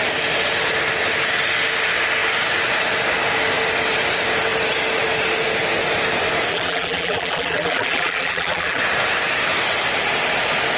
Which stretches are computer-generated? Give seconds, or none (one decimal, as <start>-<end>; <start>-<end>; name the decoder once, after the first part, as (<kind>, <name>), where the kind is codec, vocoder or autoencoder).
6.5-8.8 (vocoder, BigVGAN v2)